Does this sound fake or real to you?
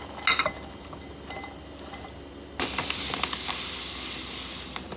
real